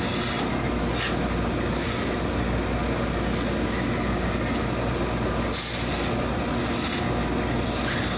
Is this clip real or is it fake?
real